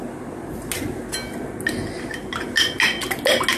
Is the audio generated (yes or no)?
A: no